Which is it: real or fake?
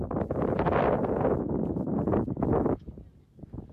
real